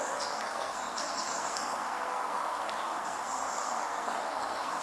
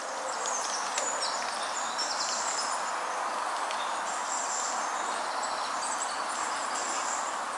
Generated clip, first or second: first